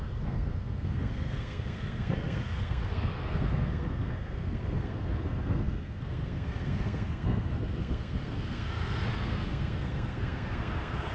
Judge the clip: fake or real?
fake